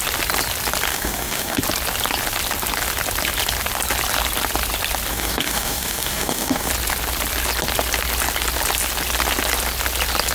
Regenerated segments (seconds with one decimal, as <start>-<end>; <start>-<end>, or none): 0.9-1.6; 5.1-6.7